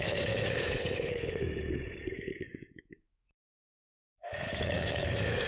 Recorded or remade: remade